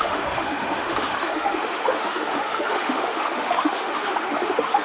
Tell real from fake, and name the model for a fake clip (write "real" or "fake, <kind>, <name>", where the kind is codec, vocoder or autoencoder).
fake, autoencoder, DAC-VAE